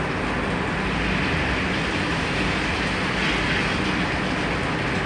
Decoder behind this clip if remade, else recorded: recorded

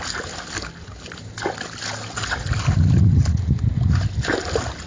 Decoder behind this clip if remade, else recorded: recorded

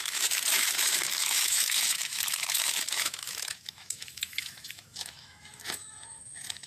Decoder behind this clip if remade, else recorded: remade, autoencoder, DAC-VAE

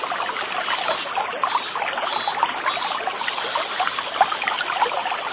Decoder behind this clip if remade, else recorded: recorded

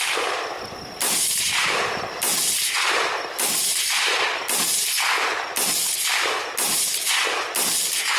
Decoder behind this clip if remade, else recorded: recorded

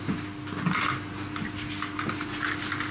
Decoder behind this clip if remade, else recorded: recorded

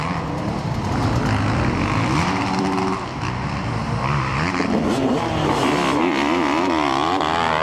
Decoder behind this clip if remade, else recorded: recorded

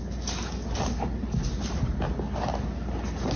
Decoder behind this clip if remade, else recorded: recorded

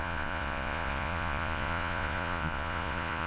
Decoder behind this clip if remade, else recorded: remade, vocoder, Vocos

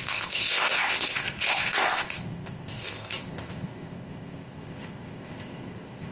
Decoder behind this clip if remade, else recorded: remade, codec, ZipCodec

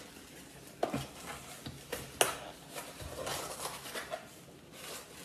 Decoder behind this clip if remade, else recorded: recorded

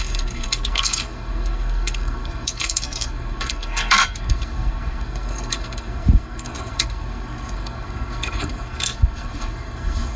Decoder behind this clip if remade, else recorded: remade, codec, SNAC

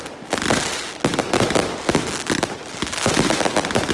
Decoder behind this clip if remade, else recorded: recorded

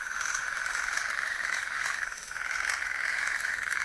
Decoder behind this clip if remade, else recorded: remade, autoencoder, DAC-VAE